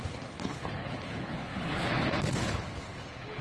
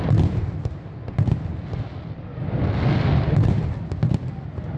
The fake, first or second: first